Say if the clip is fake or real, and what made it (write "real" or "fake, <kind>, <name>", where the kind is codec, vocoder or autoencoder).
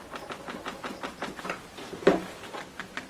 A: real